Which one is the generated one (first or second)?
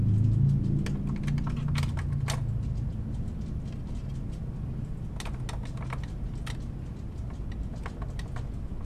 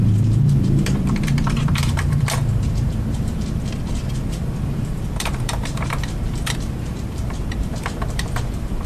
second